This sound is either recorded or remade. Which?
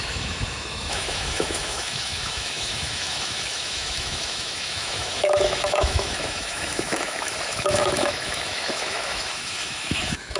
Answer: remade